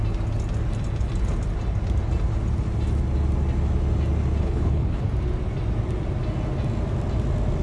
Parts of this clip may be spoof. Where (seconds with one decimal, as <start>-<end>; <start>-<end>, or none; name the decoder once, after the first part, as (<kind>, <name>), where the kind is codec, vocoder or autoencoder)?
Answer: 4.4-5.0 (codec, HILCodec)